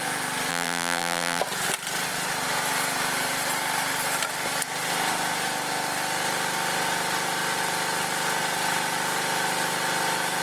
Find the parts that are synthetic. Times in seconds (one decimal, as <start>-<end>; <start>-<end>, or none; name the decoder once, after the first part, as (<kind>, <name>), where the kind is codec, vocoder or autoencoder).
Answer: 0.5-1.4 (vocoder, BigVGAN v2)